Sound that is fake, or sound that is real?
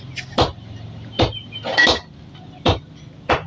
real